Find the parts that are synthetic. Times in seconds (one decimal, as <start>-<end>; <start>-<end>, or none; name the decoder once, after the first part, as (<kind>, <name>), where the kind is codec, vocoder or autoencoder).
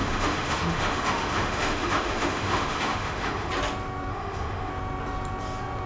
0.0-3.5 (autoencoder, DAC-VAE); 4.1-4.7